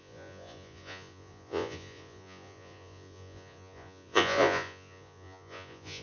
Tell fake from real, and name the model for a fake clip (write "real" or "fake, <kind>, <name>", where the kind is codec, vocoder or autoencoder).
fake, vocoder, Vocos